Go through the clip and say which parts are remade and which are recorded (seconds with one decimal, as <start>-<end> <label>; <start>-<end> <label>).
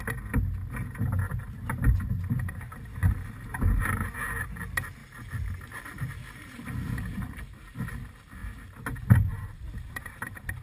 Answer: 0.0-10.6 recorded